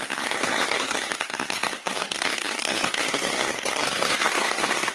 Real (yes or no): no